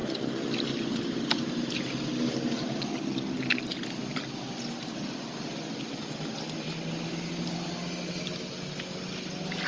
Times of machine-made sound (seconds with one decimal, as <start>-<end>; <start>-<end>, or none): none